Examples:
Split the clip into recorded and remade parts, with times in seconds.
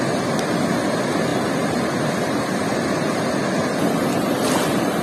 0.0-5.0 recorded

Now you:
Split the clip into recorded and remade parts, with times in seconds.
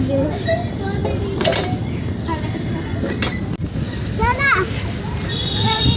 0.0-6.0 recorded